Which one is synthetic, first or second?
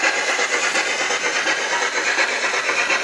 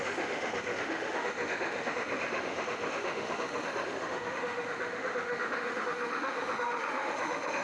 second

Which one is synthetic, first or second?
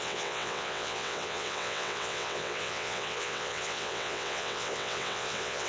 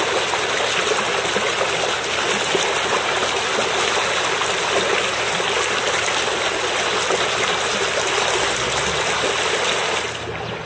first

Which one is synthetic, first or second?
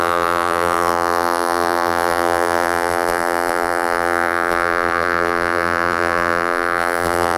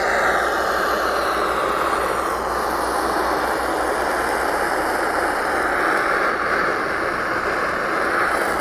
first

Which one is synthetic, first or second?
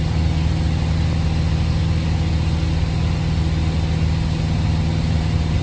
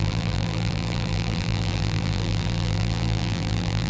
second